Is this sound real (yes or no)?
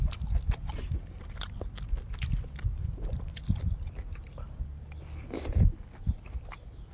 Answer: yes